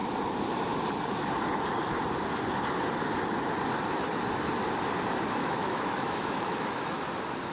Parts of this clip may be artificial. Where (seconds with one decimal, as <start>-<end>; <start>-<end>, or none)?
5.4-7.0